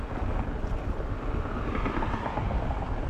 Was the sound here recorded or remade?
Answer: recorded